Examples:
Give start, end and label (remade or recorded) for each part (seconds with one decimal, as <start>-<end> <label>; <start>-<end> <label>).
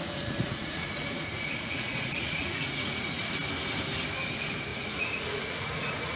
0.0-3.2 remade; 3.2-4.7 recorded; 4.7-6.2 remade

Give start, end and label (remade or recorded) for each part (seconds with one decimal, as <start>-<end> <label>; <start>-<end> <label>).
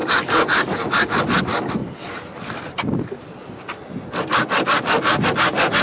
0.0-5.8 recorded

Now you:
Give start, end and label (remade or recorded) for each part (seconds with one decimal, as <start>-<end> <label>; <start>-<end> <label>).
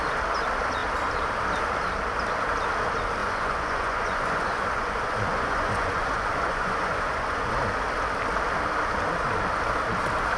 0.0-3.2 recorded; 3.2-7.5 remade; 7.5-10.4 recorded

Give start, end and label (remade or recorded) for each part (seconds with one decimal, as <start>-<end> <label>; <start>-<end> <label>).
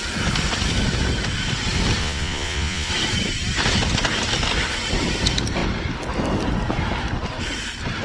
0.0-2.0 recorded; 2.0-2.9 remade; 2.9-8.0 recorded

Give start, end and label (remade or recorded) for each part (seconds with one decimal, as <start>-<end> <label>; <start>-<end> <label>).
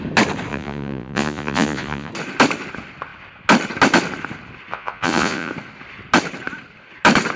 0.0-0.5 recorded; 0.5-2.1 remade; 2.1-4.7 recorded; 4.7-5.5 remade; 5.5-7.4 recorded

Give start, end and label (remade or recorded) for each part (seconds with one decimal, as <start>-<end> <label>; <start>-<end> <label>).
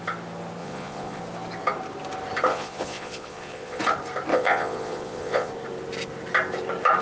0.0-0.6 recorded; 0.6-1.2 remade; 1.2-2.5 recorded; 2.5-3.8 remade; 3.8-4.3 recorded; 4.3-5.5 remade; 5.5-7.0 recorded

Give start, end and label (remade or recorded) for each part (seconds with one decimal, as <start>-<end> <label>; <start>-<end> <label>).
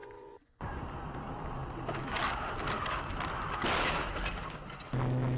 0.0-0.8 remade; 0.8-5.4 recorded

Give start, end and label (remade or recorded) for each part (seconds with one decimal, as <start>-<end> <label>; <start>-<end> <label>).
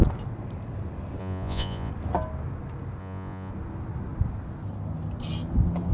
0.0-1.2 recorded; 1.2-1.9 remade; 1.9-3.0 recorded; 3.0-3.5 remade; 3.5-5.9 recorded